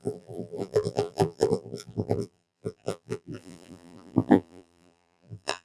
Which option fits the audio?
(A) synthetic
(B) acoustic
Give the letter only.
A